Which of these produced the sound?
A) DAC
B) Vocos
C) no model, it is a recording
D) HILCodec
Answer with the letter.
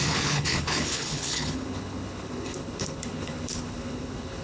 D